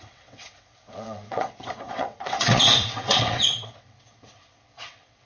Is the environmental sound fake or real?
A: fake